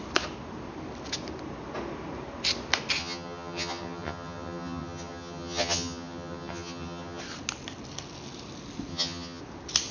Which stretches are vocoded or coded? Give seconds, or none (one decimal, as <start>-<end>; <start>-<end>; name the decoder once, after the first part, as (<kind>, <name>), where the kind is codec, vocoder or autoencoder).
3.0-7.2 (vocoder, HiFi-GAN); 8.9-9.4